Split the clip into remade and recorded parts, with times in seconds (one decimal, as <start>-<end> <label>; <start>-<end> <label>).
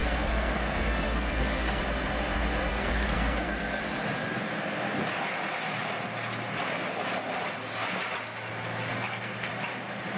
0.0-1.8 remade; 1.8-2.7 recorded; 2.7-3.8 remade; 3.8-8.9 recorded; 8.9-9.5 remade; 9.5-10.2 recorded